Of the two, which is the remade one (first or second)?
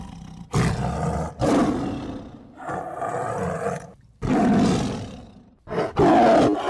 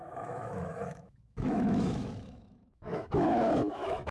second